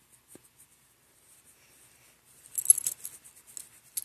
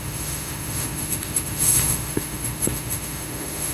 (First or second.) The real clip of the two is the first